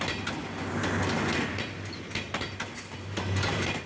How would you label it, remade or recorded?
recorded